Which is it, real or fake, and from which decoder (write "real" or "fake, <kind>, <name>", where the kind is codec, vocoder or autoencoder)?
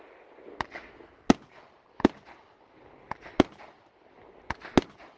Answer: real